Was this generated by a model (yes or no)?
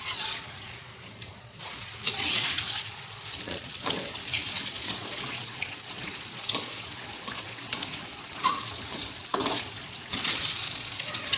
yes